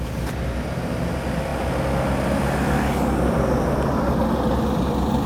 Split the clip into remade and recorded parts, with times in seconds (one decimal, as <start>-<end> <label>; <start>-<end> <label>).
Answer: 0.0-5.3 recorded